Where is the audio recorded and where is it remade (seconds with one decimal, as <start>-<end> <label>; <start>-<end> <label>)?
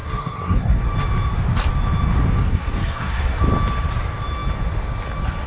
0.0-0.8 remade; 0.8-2.5 recorded; 2.5-3.4 remade; 3.4-5.5 recorded